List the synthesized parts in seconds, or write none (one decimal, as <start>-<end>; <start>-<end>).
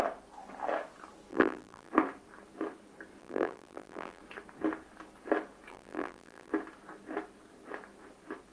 1.3-1.9; 3.2-4.2; 5.7-6.5